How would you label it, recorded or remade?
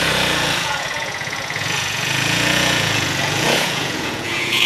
remade